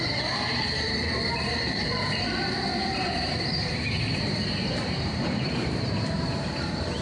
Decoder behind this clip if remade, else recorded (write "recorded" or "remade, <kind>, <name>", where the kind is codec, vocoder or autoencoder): remade, vocoder, BigVGAN v2